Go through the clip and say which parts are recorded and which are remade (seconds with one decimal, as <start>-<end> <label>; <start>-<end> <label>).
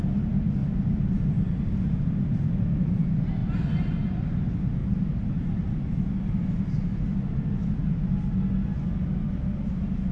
0.0-4.8 recorded; 4.8-5.9 remade; 5.9-10.1 recorded